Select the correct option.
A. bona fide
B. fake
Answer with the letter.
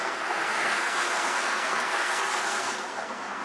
B